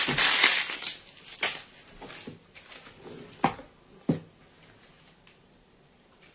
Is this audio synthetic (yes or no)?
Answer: no